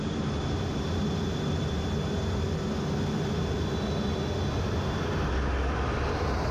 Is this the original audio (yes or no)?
yes